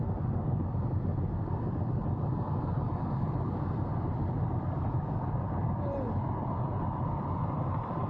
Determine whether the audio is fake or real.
real